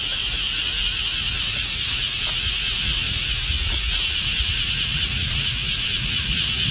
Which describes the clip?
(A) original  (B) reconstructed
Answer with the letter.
B